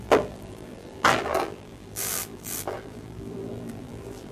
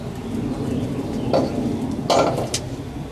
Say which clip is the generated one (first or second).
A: first